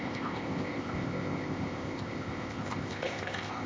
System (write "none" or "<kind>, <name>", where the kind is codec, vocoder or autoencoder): codec, ZipCodec